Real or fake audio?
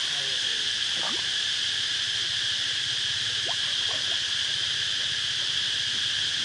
real